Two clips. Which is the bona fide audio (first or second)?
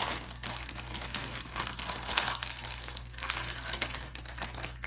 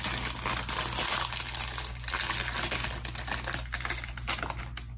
second